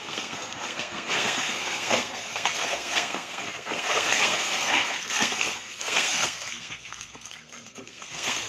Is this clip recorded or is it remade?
remade